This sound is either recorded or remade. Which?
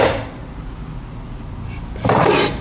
recorded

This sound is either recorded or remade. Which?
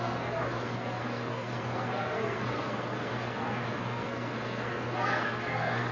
remade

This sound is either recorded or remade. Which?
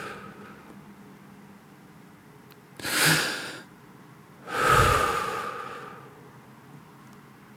recorded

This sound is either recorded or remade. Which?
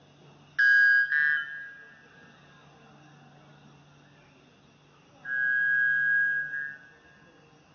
recorded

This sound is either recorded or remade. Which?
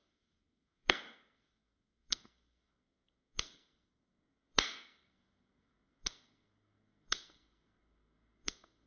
remade